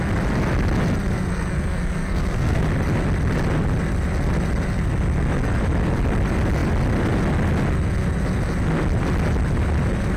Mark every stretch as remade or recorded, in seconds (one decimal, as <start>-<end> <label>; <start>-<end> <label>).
0.0-1.3 recorded; 1.3-2.6 remade; 2.6-10.2 recorded